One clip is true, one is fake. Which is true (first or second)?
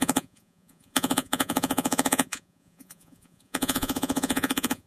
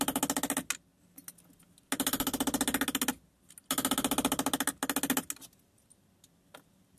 second